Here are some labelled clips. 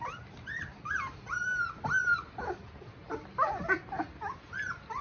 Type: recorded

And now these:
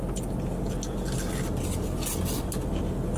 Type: recorded